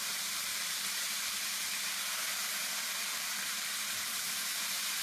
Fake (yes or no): yes